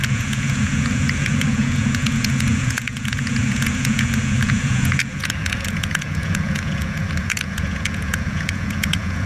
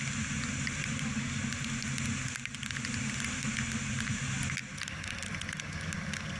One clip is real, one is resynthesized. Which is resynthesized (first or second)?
first